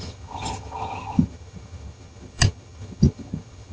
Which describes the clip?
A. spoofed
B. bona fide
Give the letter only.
A